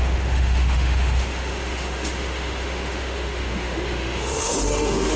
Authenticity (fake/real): fake